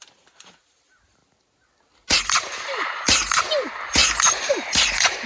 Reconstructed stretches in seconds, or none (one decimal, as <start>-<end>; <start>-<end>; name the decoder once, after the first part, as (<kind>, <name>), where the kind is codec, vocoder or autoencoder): 0.0-1.2 (vocoder, BigVGAN v2); 2.2-5.3